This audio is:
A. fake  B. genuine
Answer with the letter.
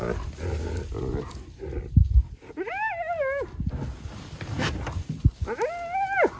B